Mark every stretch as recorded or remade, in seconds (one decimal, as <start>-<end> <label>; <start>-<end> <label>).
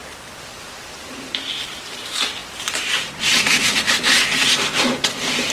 0.0-2.0 remade; 2.0-2.4 recorded; 2.4-3.6 remade; 3.6-5.5 recorded